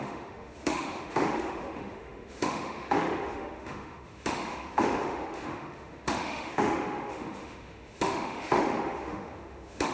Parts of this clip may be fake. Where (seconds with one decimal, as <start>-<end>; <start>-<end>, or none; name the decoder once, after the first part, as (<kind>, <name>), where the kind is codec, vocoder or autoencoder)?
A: 0.0-9.9 (autoencoder, DAC-VAE)